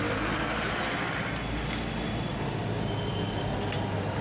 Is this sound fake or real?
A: real